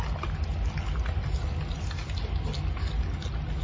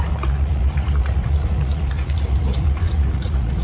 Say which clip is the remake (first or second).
second